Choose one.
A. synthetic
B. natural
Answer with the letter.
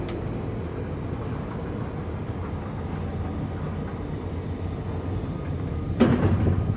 B